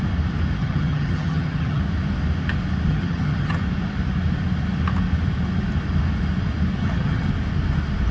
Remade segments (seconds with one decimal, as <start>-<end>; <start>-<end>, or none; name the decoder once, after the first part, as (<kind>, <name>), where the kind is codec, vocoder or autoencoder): 0.6-1.8 (vocoder, HiFi-GAN); 2.9-3.6; 6.8-7.3